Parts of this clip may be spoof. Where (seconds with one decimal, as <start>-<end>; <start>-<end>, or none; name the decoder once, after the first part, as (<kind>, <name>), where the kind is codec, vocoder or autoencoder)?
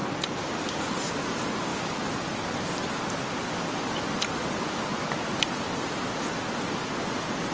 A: none